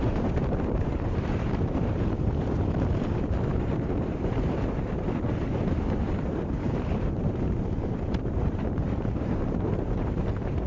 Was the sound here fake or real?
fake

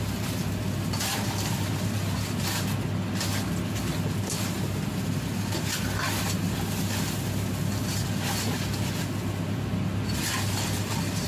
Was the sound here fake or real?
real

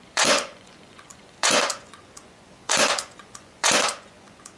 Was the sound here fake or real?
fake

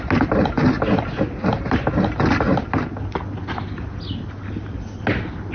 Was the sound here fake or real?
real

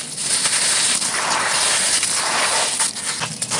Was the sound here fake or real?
real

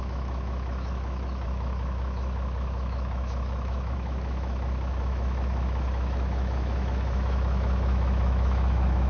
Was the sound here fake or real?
fake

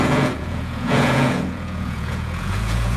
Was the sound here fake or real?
fake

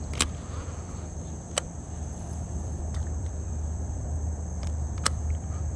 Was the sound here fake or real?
fake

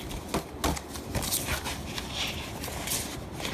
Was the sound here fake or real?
real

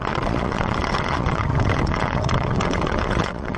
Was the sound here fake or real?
fake